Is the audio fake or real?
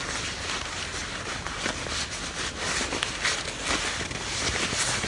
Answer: real